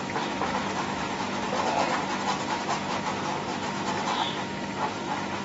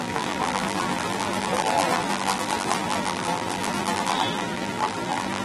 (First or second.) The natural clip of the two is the first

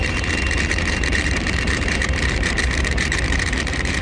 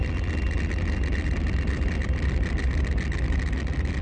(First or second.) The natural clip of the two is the second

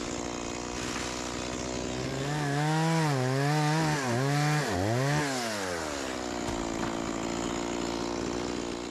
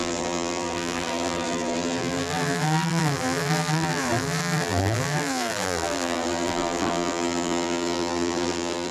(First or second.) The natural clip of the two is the first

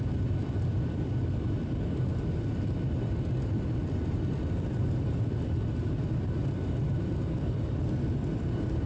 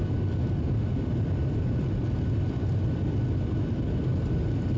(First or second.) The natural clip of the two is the second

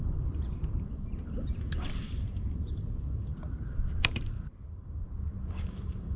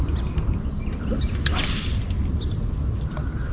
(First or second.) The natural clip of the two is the second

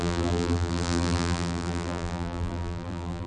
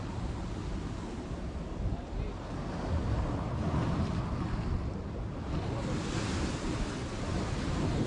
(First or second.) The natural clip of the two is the second